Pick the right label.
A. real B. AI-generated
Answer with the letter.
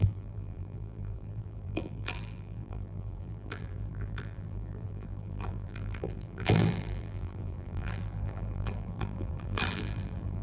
B